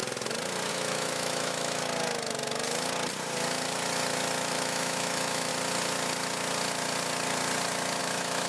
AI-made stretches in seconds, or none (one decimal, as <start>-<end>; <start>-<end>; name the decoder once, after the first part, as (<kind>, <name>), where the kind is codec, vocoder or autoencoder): 0.7-1.8 (autoencoder, DAC-VAE); 4.5-5.5; 8.0-8.5